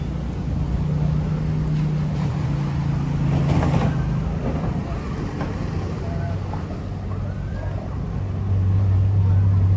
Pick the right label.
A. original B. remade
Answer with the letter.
A